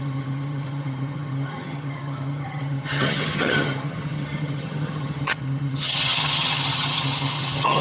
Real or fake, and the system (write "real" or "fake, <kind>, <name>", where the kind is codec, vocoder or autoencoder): fake, vocoder, HiFi-GAN